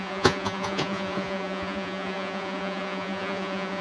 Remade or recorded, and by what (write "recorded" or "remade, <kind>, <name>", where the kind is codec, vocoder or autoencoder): remade, vocoder, Vocos